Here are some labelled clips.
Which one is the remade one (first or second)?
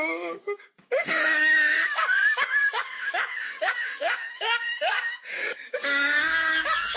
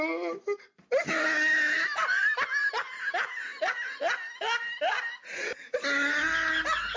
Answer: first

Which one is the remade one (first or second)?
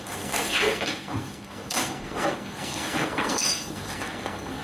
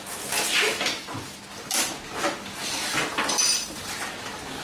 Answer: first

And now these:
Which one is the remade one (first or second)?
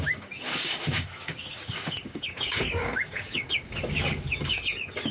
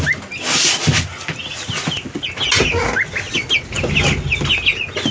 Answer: first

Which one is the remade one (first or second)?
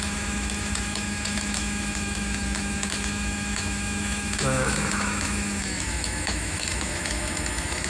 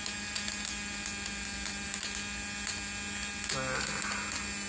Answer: first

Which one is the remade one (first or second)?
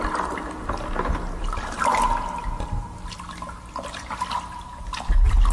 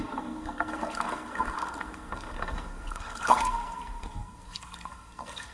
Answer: second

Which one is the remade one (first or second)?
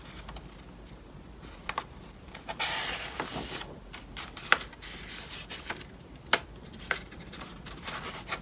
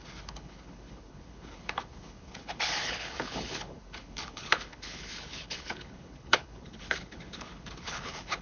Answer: second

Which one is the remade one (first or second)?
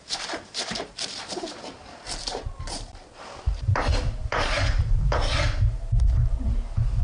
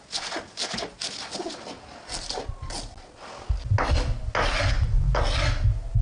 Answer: first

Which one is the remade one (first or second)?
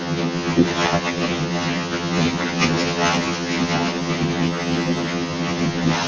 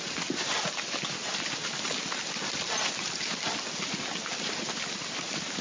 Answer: first